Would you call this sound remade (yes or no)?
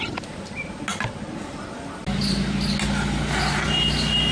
no